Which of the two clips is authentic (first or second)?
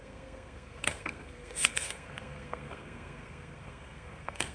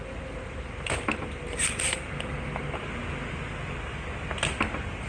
second